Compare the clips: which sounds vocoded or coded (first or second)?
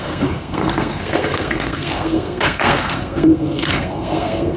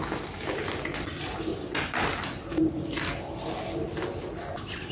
first